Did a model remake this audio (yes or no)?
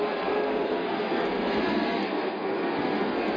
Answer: yes